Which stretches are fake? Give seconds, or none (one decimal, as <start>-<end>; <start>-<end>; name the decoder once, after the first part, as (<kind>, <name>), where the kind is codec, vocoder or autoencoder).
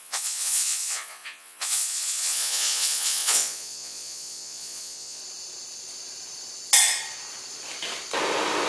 0.0-5.2 (vocoder, Vocos)